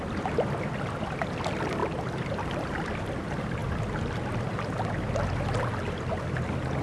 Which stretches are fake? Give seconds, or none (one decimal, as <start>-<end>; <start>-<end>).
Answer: none